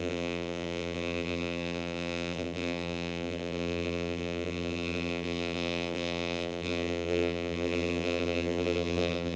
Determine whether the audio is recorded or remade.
remade